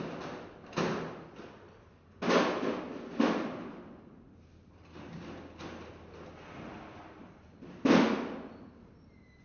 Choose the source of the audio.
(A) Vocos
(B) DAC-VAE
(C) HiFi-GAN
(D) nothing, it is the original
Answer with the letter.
D